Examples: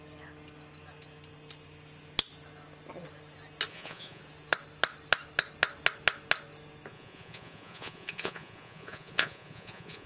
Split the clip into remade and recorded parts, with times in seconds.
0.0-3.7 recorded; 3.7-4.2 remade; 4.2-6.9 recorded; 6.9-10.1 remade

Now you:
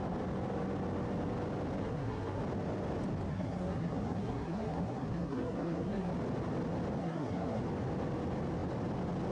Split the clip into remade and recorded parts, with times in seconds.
0.0-1.8 recorded; 1.8-2.4 remade; 2.4-3.3 recorded; 3.3-6.1 remade; 6.1-7.0 recorded; 7.0-7.6 remade; 7.6-9.3 recorded

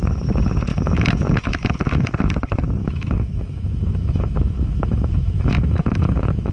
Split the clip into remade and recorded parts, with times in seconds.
0.0-0.7 recorded; 0.7-2.1 remade; 2.1-2.8 recorded; 2.8-6.5 remade

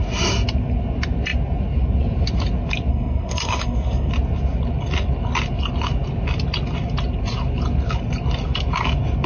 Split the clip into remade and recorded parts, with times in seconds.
0.0-2.9 recorded; 2.9-4.1 remade; 4.1-9.3 recorded

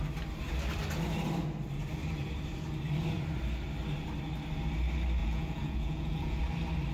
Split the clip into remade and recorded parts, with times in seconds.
0.0-5.2 recorded; 5.2-6.4 remade; 6.4-6.9 recorded

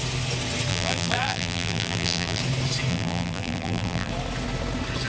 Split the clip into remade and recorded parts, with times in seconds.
0.0-0.7 recorded; 0.7-2.4 remade; 2.4-2.9 recorded; 2.9-4.1 remade; 4.1-5.1 recorded

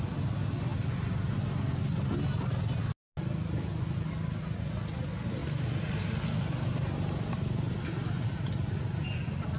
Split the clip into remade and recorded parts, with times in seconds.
0.0-0.7 recorded; 0.7-1.8 remade; 1.8-5.4 recorded; 5.4-8.5 remade; 8.5-9.6 recorded

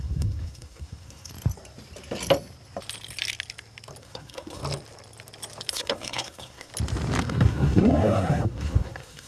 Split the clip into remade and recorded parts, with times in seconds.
0.0-1.3 remade; 1.3-4.0 recorded; 4.0-4.6 remade; 4.6-5.7 recorded; 5.7-6.7 remade; 6.7-7.2 recorded; 7.2-9.3 remade